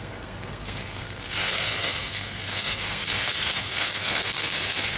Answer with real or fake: fake